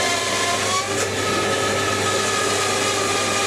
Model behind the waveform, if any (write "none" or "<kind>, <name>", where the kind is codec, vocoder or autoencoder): none